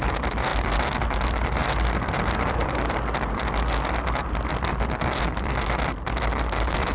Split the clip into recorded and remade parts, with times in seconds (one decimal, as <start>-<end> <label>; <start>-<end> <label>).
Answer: 0.0-6.9 recorded

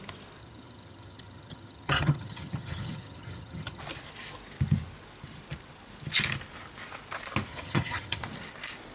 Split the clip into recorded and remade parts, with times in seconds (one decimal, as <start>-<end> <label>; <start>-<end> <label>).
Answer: 0.0-0.4 recorded; 0.4-3.8 remade; 3.8-7.5 recorded; 7.5-8.2 remade; 8.2-8.9 recorded

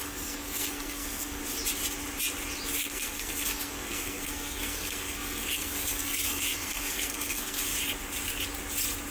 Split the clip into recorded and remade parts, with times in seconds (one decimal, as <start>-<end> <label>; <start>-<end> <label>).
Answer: 0.0-1.4 remade; 1.4-2.8 recorded; 2.8-7.7 remade; 7.7-9.1 recorded